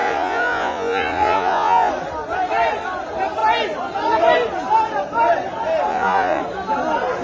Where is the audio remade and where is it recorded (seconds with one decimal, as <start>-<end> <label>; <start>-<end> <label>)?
0.0-1.9 remade; 1.9-5.9 recorded; 5.9-6.4 remade; 6.4-7.2 recorded